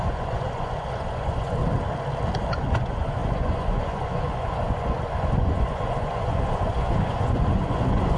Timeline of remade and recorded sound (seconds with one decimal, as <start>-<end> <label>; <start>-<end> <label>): 0.0-1.6 remade; 1.6-2.5 recorded; 2.5-8.2 remade

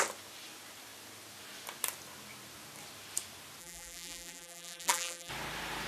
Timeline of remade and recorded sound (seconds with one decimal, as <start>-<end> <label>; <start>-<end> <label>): 0.0-3.6 recorded; 3.6-5.3 remade; 5.3-5.9 recorded

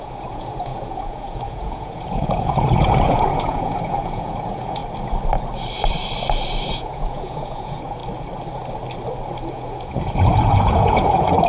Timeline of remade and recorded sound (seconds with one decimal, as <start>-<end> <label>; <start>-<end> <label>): 0.0-4.8 remade; 4.8-6.7 recorded; 6.7-8.0 remade; 8.0-9.5 recorded; 9.5-11.5 remade